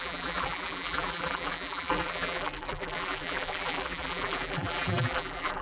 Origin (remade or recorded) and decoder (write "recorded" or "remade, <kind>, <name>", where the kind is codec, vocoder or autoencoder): remade, vocoder, BigVGAN v2